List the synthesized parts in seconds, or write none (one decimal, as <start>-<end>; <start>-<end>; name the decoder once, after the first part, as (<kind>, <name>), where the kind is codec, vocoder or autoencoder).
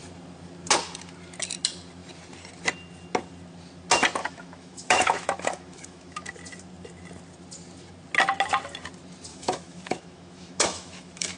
4.2-6.3 (autoencoder, DAC-VAE); 9.3-11.4